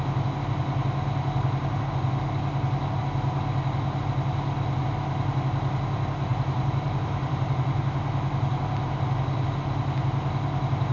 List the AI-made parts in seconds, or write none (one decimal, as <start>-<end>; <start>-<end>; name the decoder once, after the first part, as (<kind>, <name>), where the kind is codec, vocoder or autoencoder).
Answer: 6.3-7.8 (vocoder, BigVGAN v2)